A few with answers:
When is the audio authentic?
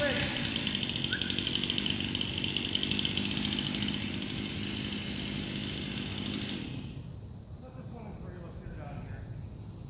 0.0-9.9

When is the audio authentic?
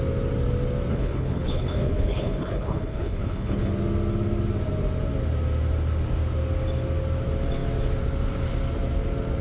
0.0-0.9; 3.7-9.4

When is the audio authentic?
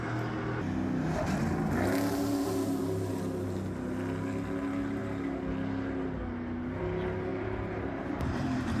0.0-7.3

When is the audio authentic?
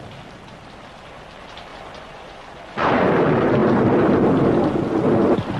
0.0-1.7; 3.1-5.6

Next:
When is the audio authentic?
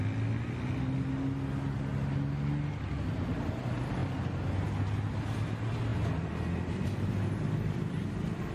0.0-5.9; 7.1-8.5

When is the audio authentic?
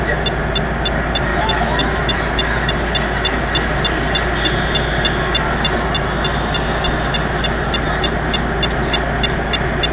0.0-1.3; 2.7-9.9